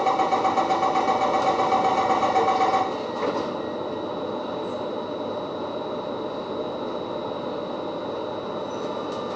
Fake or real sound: real